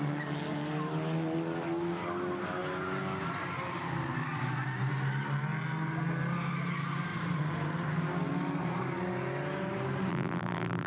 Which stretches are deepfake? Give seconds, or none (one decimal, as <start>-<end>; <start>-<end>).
10.1-10.9